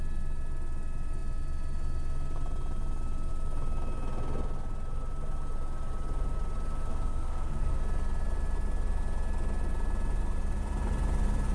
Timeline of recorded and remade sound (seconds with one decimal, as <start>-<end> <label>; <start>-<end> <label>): 0.0-6.9 recorded; 6.9-7.8 remade; 7.8-11.5 recorded